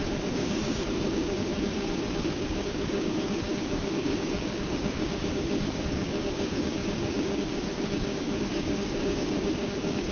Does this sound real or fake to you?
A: fake